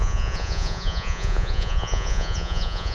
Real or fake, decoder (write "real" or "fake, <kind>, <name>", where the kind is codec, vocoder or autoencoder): fake, vocoder, Vocos